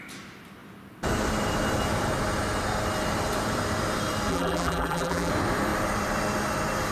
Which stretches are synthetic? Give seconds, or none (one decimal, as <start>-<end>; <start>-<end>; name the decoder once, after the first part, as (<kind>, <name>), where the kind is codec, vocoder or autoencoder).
4.3-5.3 (vocoder, BigVGAN v2)